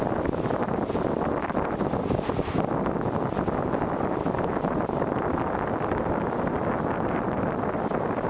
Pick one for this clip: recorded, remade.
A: recorded